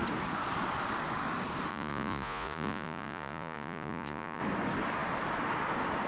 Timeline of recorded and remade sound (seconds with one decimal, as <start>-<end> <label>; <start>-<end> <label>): 0.0-1.7 recorded; 1.7-4.4 remade; 4.4-6.1 recorded